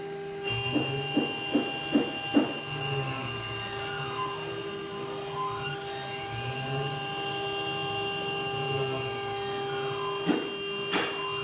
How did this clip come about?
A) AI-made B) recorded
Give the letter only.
B